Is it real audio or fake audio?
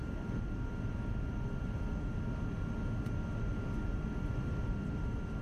real